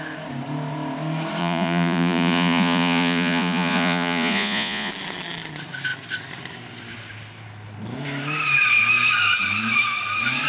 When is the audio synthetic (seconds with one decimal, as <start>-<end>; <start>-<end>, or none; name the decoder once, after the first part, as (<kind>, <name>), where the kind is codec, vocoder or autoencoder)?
1.4-4.9 (vocoder, Vocos)